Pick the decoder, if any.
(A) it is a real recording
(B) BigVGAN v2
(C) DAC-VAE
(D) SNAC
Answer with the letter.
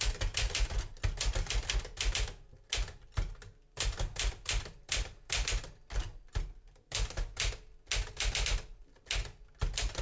A